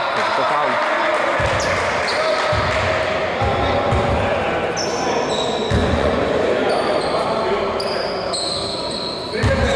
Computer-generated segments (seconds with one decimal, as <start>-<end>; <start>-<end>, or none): 5.8-6.3